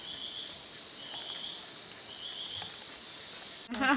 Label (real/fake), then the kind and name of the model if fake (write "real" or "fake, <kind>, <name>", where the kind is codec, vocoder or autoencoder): real